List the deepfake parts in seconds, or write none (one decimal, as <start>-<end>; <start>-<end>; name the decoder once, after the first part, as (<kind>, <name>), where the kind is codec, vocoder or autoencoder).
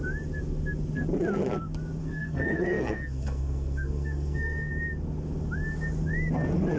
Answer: 2.0-4.7 (codec, SNAC)